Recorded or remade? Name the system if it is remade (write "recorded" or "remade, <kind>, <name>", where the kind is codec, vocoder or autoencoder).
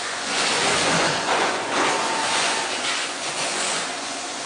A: remade, vocoder, Vocos